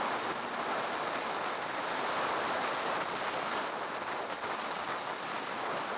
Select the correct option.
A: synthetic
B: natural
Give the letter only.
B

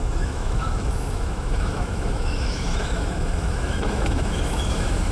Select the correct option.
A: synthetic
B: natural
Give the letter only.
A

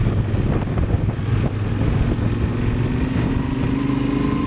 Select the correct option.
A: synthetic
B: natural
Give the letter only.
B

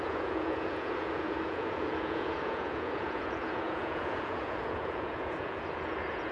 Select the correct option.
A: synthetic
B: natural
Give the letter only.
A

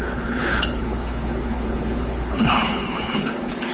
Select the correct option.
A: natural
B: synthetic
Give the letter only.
B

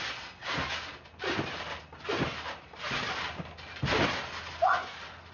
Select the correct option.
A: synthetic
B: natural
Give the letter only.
B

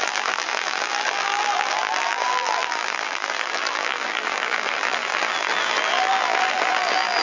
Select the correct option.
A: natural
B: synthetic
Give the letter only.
B